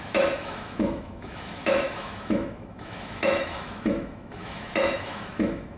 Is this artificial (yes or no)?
yes